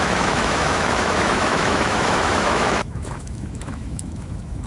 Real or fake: fake